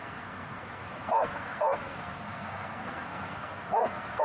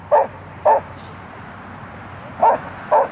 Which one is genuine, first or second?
second